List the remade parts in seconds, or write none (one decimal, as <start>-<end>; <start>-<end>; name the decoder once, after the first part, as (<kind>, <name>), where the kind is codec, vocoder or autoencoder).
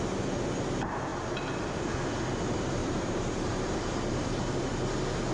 2.8-4.7 (vocoder, BigVGAN v2)